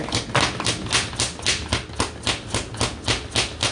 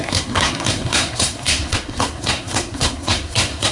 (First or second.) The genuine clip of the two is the first